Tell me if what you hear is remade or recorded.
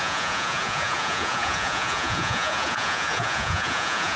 remade